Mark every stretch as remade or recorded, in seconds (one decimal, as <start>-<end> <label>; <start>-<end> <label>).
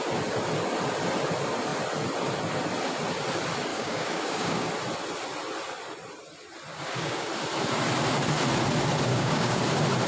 0.0-3.7 recorded; 3.7-4.7 remade; 4.7-6.7 recorded; 6.7-7.3 remade; 7.3-9.1 recorded; 9.1-9.6 remade; 9.6-10.1 recorded